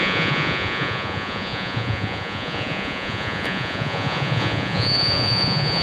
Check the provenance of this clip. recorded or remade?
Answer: remade